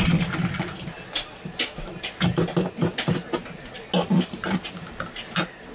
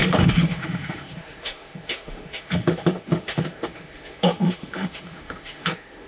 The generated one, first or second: second